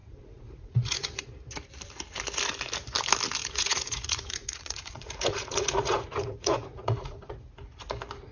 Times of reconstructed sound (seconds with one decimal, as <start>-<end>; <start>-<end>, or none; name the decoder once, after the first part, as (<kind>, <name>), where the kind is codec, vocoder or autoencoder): 0.0-1.2 (vocoder, Vocos); 3.4-7.4